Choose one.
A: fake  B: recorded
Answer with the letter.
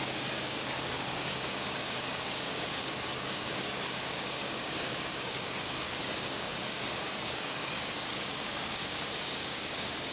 A